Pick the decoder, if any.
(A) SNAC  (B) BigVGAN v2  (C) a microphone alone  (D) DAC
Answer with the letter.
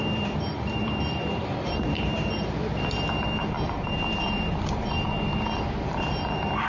B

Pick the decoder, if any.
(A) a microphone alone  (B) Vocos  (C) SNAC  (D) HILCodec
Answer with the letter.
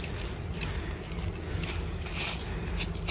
A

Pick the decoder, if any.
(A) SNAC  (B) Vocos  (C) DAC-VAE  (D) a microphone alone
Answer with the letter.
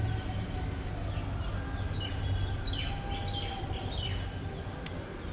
D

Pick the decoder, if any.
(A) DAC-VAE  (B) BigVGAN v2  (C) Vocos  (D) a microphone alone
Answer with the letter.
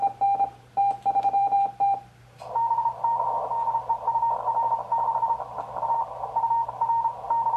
B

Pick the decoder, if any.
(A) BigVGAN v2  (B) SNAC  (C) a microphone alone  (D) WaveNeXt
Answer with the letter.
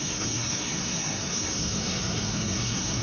B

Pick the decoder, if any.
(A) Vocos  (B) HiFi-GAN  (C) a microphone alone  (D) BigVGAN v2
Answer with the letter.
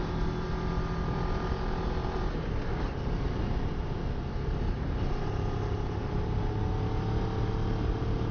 C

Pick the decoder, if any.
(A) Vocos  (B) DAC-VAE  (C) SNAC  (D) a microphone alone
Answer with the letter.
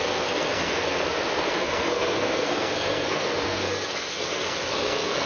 C